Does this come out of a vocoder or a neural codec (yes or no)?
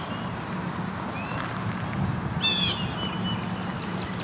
no